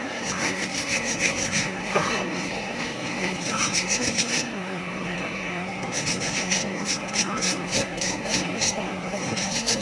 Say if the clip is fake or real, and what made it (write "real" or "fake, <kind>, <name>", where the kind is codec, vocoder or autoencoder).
fake, codec, SNAC